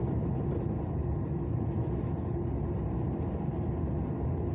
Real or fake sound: real